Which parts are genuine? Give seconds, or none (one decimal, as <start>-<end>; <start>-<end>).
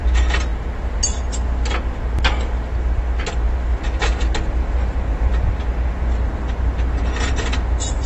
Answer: 0.0-8.1